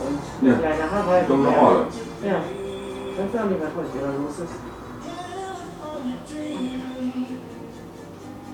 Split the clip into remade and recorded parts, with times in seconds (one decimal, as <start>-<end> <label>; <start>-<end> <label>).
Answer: 0.0-5.3 recorded; 5.3-7.5 remade; 7.5-8.5 recorded